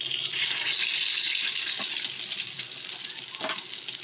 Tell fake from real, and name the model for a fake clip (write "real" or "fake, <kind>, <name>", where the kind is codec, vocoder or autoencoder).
real